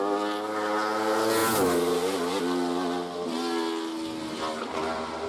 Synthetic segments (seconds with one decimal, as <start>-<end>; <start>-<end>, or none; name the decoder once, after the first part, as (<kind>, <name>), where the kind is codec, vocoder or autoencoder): none